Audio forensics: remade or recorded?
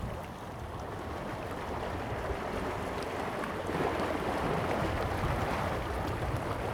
recorded